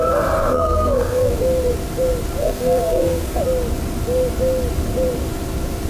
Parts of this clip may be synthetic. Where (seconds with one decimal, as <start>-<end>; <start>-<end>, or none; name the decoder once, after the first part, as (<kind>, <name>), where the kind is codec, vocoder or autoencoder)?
0.4-1.3 (codec, SNAC); 2.4-3.4